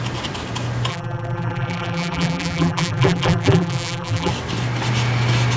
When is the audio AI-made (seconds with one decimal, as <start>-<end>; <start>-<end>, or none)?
0.9-4.3